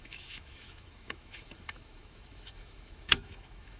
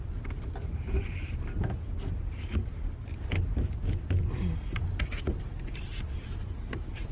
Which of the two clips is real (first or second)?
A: second